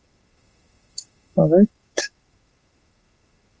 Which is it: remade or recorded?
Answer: remade